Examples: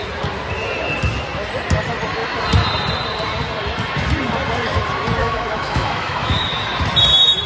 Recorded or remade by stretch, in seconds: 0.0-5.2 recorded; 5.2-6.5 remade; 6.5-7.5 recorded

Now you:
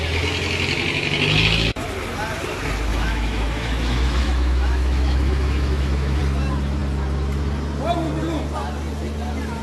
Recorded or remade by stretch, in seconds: 0.0-2.9 recorded; 2.9-6.2 remade; 6.2-9.6 recorded

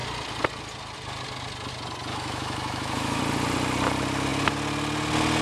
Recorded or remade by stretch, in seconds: 0.0-2.1 recorded; 2.1-3.2 remade; 3.2-5.4 recorded

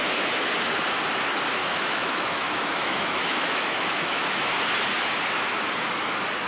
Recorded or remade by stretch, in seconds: 0.0-1.6 recorded; 1.6-4.5 remade; 4.5-6.5 recorded

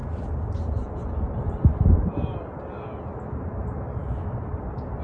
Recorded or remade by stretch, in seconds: 0.0-4.0 recorded; 4.0-4.5 remade; 4.5-5.0 recorded